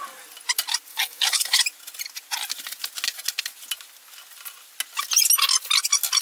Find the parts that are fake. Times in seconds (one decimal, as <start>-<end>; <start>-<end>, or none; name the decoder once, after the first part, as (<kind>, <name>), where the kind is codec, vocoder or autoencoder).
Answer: 0.9-1.6 (codec, SNAC)